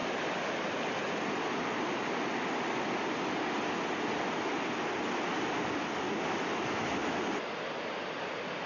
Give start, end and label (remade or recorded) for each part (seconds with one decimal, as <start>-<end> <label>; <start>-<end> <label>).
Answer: 0.0-8.7 recorded